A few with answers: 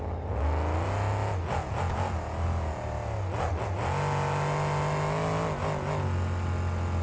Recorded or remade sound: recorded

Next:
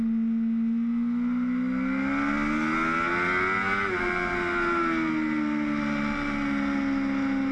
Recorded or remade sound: recorded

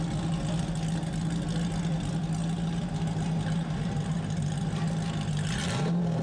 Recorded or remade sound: recorded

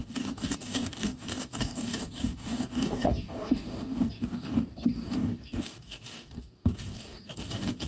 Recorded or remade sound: remade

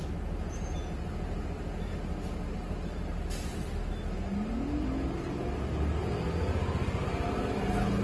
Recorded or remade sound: recorded